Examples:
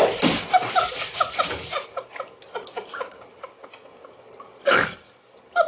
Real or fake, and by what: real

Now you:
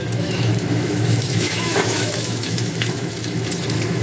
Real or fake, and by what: fake, autoencoder, DAC-VAE